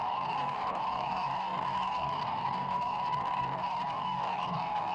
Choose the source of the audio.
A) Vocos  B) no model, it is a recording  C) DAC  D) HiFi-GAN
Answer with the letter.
C